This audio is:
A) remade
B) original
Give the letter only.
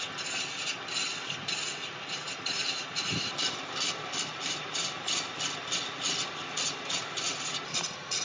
B